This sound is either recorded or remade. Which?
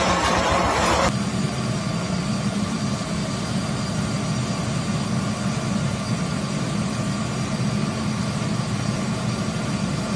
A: recorded